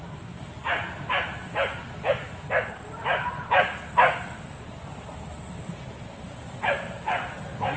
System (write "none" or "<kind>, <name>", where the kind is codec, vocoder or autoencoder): none